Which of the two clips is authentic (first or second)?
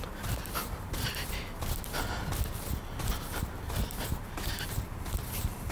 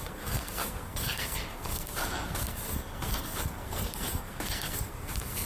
first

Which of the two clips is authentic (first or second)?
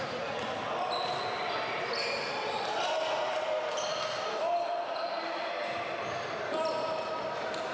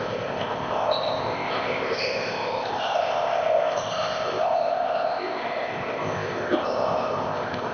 first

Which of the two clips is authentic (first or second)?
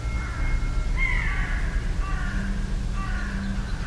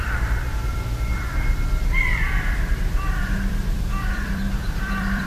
first